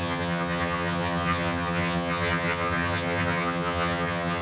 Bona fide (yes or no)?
no